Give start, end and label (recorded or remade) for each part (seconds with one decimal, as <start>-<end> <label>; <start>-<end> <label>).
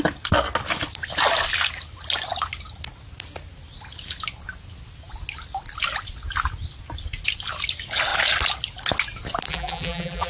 0.0-9.5 recorded; 9.5-10.3 remade